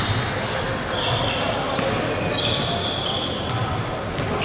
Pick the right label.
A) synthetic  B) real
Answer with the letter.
B